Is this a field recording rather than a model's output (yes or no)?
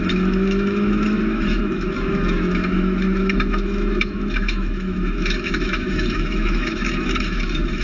no